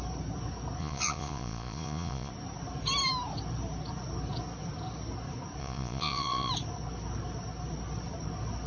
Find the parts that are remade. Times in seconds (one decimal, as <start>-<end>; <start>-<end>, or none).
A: 0.8-2.3; 5.6-6.5